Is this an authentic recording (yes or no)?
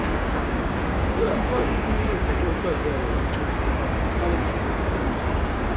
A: no